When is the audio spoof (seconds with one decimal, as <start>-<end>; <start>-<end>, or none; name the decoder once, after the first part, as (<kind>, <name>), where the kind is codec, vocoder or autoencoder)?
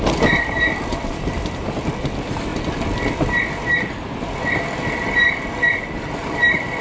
none